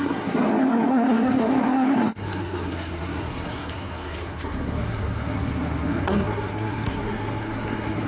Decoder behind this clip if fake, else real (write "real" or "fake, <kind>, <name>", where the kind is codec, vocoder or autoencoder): fake, codec, SNAC